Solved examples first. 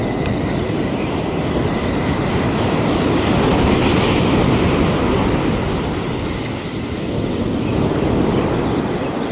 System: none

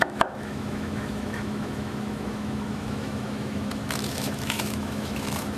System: autoencoder, DAC-VAE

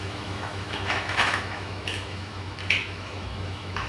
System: autoencoder, DAC-VAE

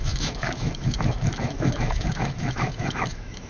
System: autoencoder, DAC-VAE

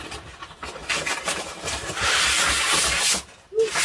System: none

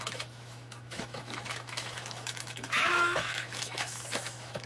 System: autoencoder, DAC-VAE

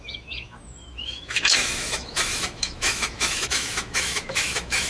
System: autoencoder, DAC-VAE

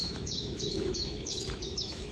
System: autoencoder, DAC-VAE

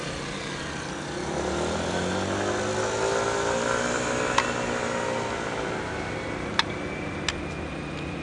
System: none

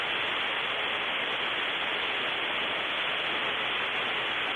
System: none